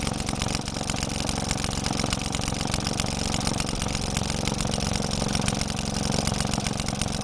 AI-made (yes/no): no